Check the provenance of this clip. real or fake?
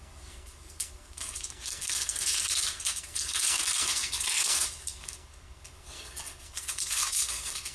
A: fake